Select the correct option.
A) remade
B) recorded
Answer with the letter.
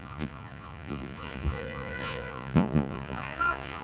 A